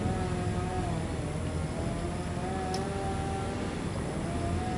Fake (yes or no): no